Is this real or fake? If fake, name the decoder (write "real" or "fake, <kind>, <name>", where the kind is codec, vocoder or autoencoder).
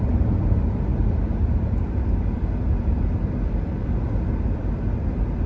real